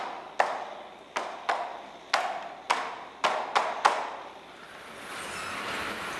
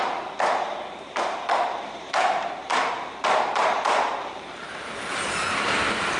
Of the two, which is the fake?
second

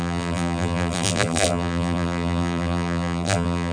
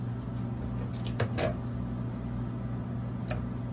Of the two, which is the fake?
first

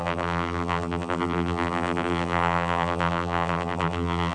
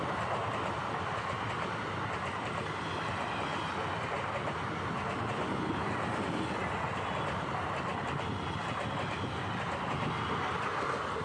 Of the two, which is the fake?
first